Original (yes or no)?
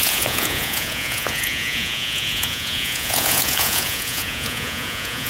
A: no